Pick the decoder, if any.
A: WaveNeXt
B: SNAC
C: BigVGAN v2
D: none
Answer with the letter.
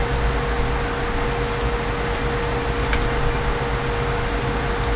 D